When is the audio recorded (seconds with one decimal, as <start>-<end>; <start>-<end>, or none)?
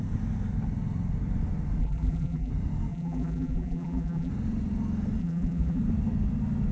0.0-1.8; 2.5-2.9; 4.3-5.2; 5.8-6.7